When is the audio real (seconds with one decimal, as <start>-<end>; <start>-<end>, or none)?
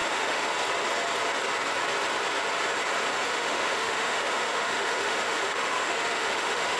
0.5-3.3